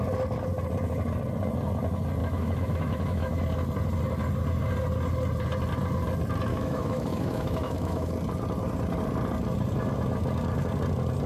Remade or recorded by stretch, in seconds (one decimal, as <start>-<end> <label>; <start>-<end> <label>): 0.0-2.2 recorded; 2.2-3.4 remade; 3.4-6.5 recorded; 6.5-8.1 remade; 8.1-11.3 recorded